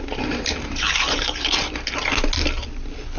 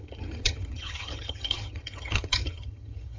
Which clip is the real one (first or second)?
first